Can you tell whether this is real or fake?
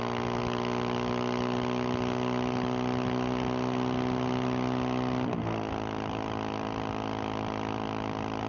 real